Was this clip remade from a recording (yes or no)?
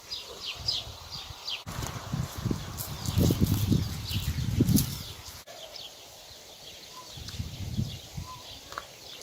no